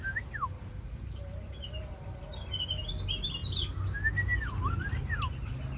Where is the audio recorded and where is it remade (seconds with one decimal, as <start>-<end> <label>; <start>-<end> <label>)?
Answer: 0.0-5.8 recorded